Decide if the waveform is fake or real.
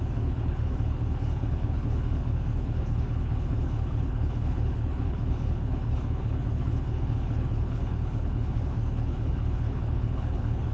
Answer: fake